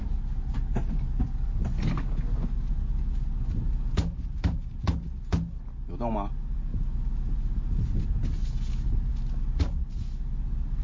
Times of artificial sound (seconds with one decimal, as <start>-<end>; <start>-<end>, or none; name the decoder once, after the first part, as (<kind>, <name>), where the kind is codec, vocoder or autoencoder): none